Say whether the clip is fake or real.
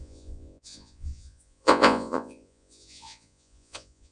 fake